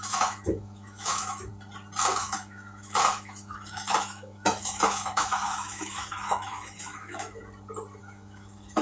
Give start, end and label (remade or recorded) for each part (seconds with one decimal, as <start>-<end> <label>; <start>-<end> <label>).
0.0-1.5 remade; 1.5-2.2 recorded; 2.2-7.4 remade; 7.4-8.0 recorded; 8.0-8.8 remade

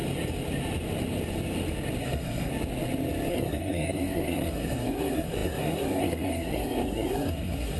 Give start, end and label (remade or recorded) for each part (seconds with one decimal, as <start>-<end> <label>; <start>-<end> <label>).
0.0-2.0 recorded; 2.0-2.5 remade; 2.5-3.3 recorded; 3.3-7.8 remade

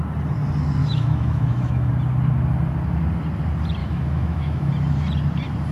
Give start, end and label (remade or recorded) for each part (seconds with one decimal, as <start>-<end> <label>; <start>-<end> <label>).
0.0-0.8 recorded; 0.8-1.9 remade; 1.9-3.8 recorded; 3.8-4.7 remade; 4.7-5.7 recorded

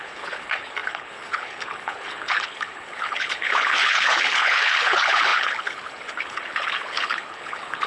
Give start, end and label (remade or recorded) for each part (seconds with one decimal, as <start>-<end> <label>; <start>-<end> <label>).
0.0-7.9 remade

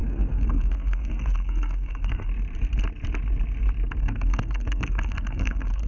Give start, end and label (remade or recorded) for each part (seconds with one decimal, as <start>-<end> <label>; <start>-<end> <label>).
0.0-2.3 remade; 2.3-4.0 recorded; 4.0-5.9 remade